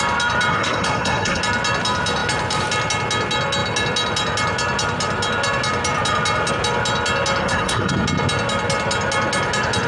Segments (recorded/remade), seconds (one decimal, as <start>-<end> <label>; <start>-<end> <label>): 0.0-0.5 recorded; 0.5-1.4 remade; 1.4-7.4 recorded; 7.4-7.9 remade; 7.9-9.9 recorded